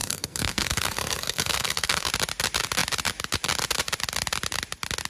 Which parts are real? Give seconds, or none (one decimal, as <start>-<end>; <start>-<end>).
2.1-5.1